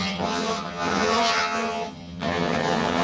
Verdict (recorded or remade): remade